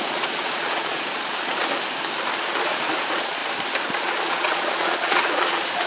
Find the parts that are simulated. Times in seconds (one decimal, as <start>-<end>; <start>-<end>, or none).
0.0-1.7; 2.6-3.4; 4.0-5.9